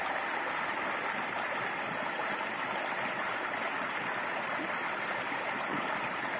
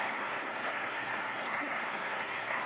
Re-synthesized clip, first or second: second